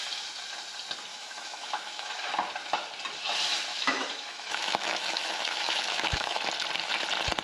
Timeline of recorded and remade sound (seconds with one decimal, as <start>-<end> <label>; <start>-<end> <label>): 0.0-1.1 recorded; 1.1-2.3 remade; 2.3-3.7 recorded; 3.7-6.4 remade; 6.4-7.4 recorded